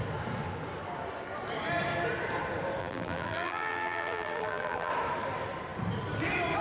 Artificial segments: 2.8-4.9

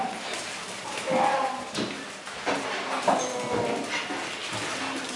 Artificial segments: none

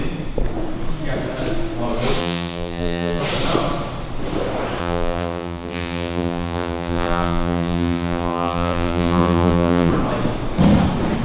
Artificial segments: 2.2-3.2; 4.8-9.9